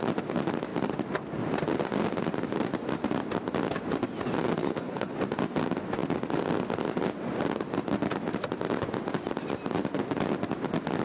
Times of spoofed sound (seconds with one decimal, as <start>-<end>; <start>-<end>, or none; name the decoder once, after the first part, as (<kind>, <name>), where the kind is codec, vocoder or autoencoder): 4.6-5.1 (codec, HILCodec)